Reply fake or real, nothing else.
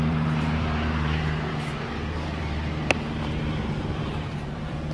fake